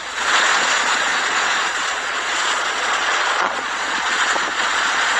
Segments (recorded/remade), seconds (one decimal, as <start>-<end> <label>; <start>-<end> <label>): 0.0-5.2 remade